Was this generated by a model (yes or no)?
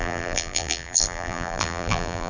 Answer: yes